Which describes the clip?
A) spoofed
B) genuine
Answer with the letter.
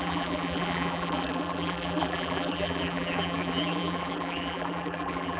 A